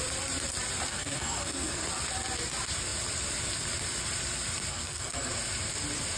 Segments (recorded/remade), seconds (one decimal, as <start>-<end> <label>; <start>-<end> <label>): 0.0-0.9 recorded; 0.9-1.8 remade; 1.8-4.7 recorded; 4.7-5.3 remade; 5.3-6.2 recorded